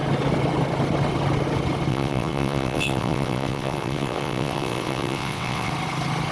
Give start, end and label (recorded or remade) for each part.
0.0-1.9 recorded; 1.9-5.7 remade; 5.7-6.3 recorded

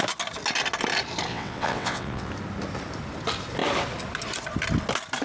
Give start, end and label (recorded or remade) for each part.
0.0-1.3 recorded; 1.3-2.3 remade; 2.3-5.2 recorded

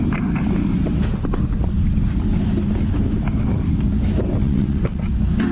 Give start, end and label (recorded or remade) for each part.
0.0-4.4 recorded; 4.4-5.1 remade; 5.1-5.5 recorded

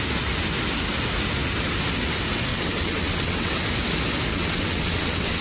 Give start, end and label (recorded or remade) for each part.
0.0-2.5 recorded; 2.5-3.5 remade; 3.5-4.3 recorded; 4.3-5.4 remade